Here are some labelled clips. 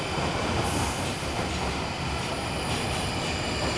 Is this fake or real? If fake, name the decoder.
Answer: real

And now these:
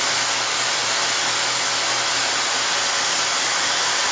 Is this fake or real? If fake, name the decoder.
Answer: real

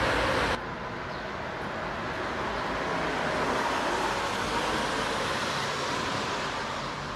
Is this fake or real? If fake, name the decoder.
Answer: real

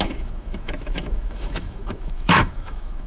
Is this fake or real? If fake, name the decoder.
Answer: fake, autoencoder, DAC-VAE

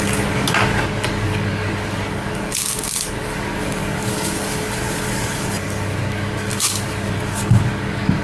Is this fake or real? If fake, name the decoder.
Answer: fake, codec, DAC